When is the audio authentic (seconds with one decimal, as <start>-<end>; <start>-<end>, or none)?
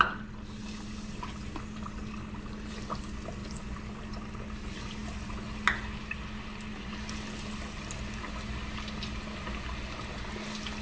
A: 0.0-10.8